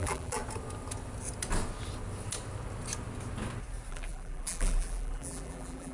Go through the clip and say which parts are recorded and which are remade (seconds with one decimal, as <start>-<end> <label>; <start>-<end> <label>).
0.0-0.4 remade; 0.4-3.9 recorded; 3.9-5.9 remade